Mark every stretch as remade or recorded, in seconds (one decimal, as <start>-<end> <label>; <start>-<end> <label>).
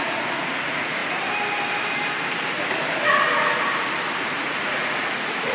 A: 0.0-1.0 remade; 1.0-4.3 recorded; 4.3-5.5 remade